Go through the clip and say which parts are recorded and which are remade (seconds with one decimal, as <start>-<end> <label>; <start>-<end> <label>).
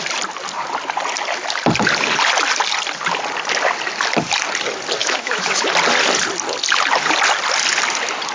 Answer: 0.0-5.0 recorded; 5.0-5.7 remade; 5.7-8.3 recorded